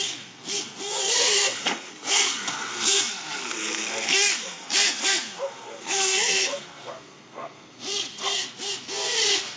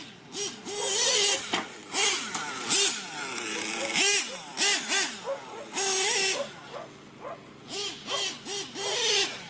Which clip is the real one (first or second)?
second